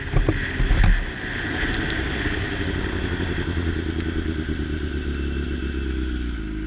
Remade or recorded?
recorded